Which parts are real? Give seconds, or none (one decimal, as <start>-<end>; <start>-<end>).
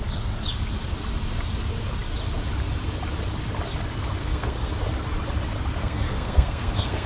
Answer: 0.0-4.2; 4.7-5.8